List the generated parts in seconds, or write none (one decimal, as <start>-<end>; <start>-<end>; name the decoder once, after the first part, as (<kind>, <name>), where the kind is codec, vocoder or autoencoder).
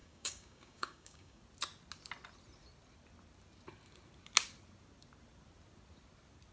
0.0-1.4 (codec, DAC)